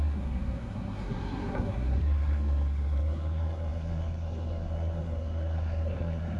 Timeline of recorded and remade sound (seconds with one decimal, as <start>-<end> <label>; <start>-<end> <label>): 0.0-6.4 remade